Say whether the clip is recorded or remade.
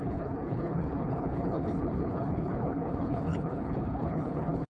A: remade